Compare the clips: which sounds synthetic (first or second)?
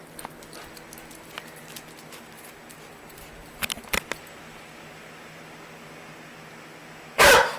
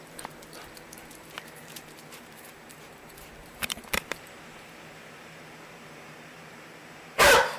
second